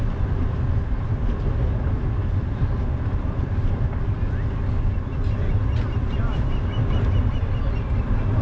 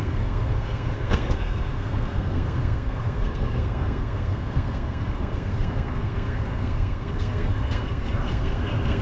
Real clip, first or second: first